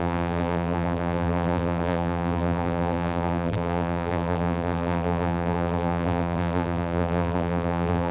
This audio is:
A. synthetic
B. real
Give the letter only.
A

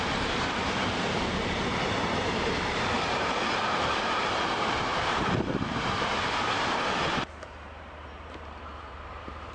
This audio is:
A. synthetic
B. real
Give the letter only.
A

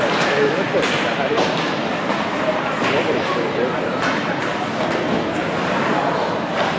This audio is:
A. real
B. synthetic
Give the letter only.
B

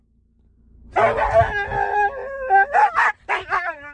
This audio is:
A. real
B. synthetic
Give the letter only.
A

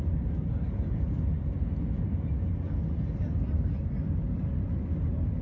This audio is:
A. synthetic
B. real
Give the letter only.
B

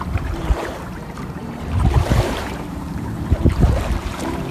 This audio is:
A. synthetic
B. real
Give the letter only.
A